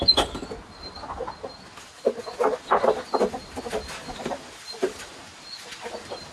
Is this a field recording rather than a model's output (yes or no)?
yes